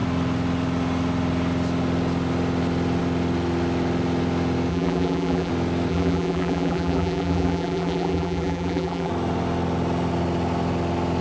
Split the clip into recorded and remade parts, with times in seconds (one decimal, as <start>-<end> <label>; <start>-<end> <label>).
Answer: 0.0-4.7 recorded; 4.7-5.5 remade; 5.5-5.9 recorded; 5.9-9.1 remade; 9.1-11.2 recorded

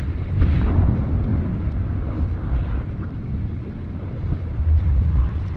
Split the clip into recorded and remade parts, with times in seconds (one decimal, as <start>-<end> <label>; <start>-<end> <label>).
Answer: 0.0-1.3 remade; 1.3-2.2 recorded; 2.2-5.6 remade